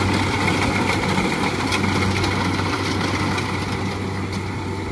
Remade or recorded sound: recorded